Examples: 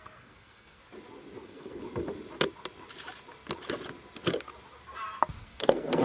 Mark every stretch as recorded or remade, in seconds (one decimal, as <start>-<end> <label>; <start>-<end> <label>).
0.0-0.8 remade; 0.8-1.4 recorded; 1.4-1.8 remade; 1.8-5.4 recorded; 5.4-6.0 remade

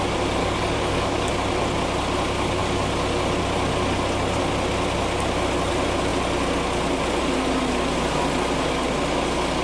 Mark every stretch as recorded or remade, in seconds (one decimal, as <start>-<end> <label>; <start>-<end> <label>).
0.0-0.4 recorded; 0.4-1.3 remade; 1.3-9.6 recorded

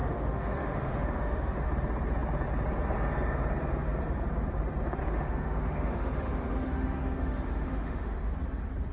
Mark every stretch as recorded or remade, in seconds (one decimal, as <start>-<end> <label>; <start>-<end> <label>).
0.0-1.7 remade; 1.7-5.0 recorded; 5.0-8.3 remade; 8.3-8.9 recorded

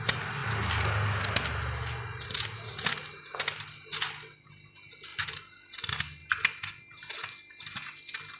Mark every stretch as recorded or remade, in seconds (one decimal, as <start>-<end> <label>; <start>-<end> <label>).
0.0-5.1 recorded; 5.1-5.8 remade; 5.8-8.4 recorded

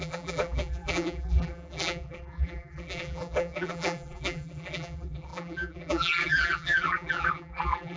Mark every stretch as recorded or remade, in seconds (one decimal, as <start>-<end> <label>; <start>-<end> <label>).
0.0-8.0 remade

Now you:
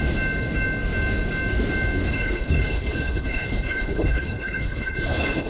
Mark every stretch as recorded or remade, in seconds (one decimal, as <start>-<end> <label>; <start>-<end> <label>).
0.0-2.1 recorded; 2.1-5.5 remade